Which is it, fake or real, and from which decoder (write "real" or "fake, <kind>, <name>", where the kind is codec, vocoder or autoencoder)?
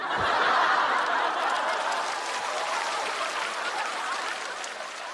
real